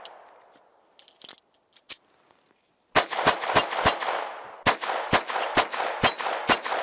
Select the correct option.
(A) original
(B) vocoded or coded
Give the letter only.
A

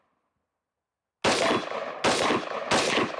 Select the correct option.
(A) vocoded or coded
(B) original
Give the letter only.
B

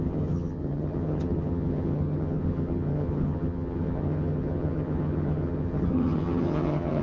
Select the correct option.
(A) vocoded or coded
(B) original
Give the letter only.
A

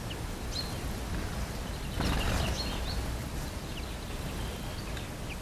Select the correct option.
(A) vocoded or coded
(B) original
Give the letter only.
B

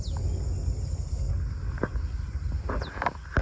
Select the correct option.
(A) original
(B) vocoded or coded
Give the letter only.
A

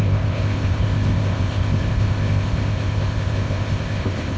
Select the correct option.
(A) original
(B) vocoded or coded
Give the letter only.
B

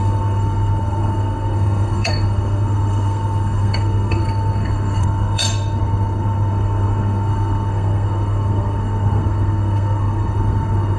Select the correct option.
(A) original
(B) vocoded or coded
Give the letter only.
B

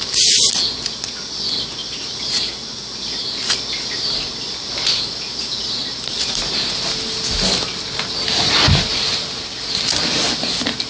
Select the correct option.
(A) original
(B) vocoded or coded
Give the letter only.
A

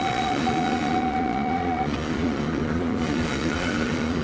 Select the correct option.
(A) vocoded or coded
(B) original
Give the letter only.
A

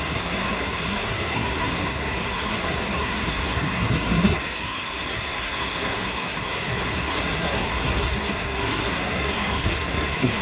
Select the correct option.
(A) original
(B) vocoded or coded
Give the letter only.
B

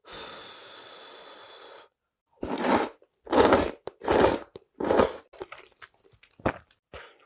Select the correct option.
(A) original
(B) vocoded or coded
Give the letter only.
A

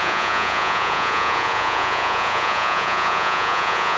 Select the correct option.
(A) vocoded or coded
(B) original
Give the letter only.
A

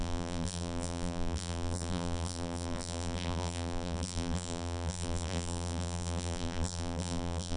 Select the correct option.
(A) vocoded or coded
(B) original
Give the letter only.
A